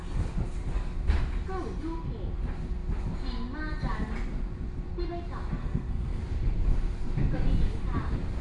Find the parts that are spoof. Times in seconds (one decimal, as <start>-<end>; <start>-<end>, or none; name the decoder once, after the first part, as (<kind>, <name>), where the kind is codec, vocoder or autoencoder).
5.6-6.2 (codec, SNAC)